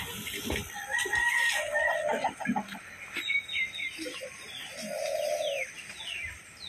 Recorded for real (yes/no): yes